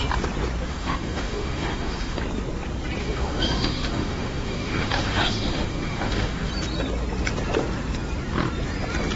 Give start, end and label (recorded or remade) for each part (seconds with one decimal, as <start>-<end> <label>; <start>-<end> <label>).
0.0-0.7 recorded; 0.7-2.2 remade; 2.2-3.0 recorded; 3.0-6.5 remade; 6.5-9.2 recorded